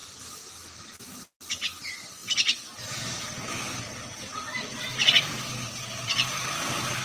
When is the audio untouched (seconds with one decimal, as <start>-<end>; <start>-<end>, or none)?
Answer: 0.0-7.0